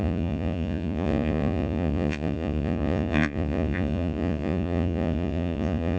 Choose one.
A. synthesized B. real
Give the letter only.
A